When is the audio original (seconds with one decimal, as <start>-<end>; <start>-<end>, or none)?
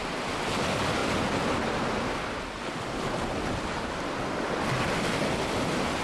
0.0-6.0